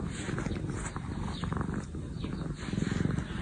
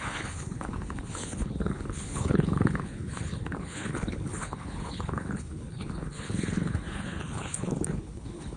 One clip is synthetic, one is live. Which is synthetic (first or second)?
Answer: second